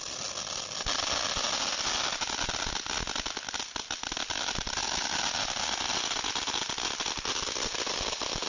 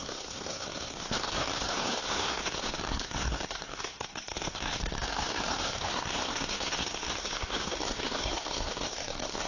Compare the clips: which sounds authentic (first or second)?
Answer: first